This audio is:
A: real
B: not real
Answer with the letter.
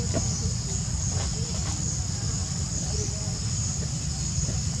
A